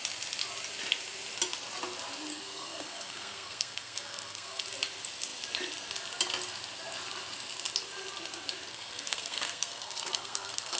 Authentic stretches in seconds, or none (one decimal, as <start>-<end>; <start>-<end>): 0.0-2.3; 4.6-8.7